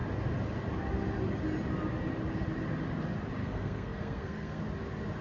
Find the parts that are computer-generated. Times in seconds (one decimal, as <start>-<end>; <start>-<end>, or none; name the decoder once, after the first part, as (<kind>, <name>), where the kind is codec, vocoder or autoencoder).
3.4-4.6 (codec, SNAC)